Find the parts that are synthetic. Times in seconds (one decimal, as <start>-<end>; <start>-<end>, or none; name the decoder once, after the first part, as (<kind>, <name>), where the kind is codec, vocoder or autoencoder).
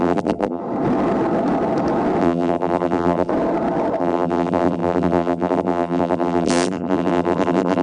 0.0-0.6 (vocoder, BigVGAN v2); 2.2-3.3; 4.0-7.8